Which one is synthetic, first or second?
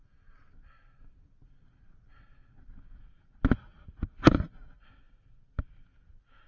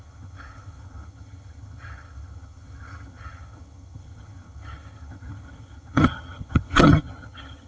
second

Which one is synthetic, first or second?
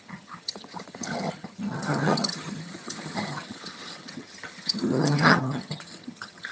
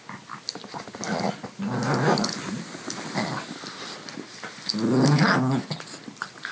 first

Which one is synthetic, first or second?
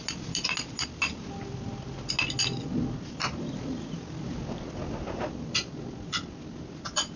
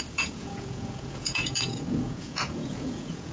second